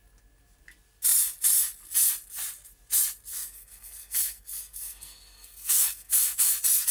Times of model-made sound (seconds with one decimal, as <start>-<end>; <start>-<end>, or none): 3.3-6.5